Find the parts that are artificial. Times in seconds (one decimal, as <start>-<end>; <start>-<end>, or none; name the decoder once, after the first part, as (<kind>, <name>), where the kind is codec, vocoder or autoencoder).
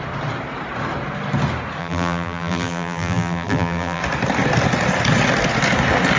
1.8-4.0 (vocoder, BigVGAN v2)